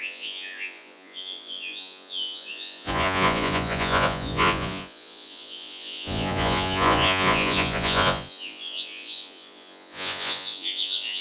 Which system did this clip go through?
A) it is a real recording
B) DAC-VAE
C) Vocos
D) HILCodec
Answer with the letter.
C